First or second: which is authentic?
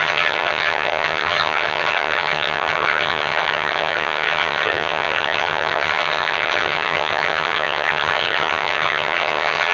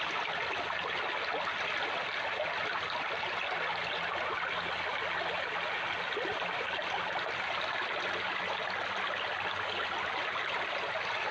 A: second